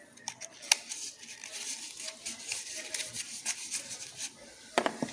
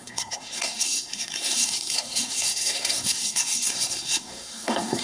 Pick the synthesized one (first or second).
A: second